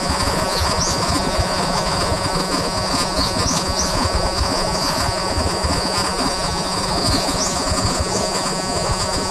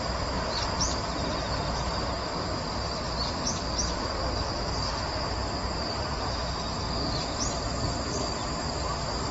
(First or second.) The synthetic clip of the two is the first